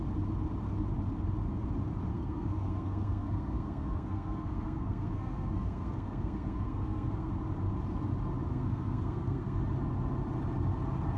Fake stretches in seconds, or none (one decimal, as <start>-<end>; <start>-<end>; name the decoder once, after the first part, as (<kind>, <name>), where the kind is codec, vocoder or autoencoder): 2.1-7.3 (codec, SNAC); 8.5-9.6